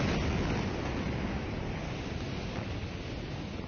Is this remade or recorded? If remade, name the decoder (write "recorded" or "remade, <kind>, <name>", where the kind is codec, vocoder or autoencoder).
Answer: recorded